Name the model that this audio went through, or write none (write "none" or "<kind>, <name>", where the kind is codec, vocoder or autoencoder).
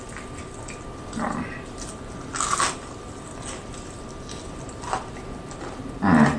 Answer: none